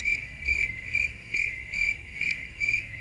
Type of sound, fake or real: fake